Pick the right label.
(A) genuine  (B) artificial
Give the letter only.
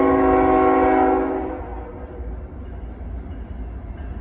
A